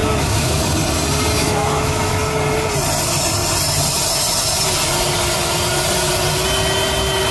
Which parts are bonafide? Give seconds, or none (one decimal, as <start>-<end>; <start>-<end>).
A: 0.6-1.4; 2.1-7.3